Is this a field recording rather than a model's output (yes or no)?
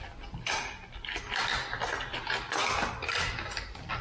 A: yes